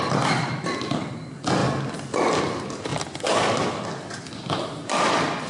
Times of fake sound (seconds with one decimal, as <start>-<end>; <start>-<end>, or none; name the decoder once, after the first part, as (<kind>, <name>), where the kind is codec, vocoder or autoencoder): 0.0-1.6 (vocoder, BigVGAN v2); 2.4-2.9; 4.3-5.5